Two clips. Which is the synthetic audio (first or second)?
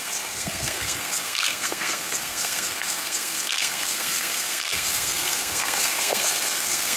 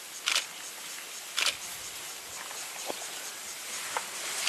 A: first